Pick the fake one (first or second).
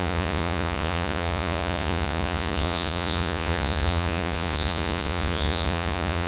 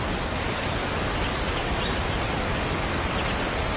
first